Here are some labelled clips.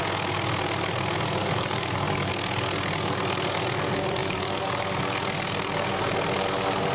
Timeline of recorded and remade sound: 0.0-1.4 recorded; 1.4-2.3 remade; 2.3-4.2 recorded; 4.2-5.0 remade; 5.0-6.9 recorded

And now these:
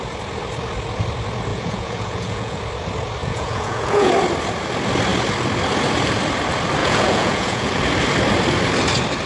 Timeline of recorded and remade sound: 0.0-1.5 recorded; 1.5-2.6 remade; 2.6-3.2 recorded; 3.2-4.1 remade; 4.1-6.8 recorded; 6.8-7.8 remade; 7.8-9.3 recorded

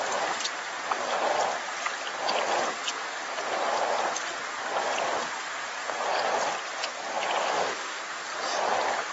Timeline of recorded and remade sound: 0.0-7.4 recorded; 7.4-8.0 remade; 8.0-9.1 recorded

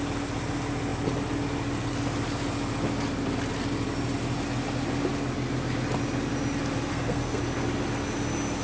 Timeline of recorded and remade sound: 0.0-6.9 recorded; 6.9-7.4 remade; 7.4-8.6 recorded

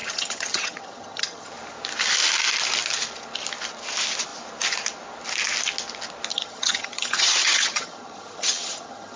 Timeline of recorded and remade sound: 0.0-1.5 remade; 1.5-6.3 recorded; 6.3-9.2 remade

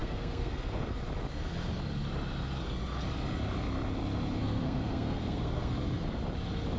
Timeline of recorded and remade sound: 0.0-0.9 remade; 0.9-4.4 recorded; 4.4-5.7 remade; 5.7-6.8 recorded